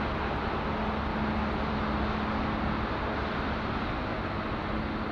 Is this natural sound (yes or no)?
yes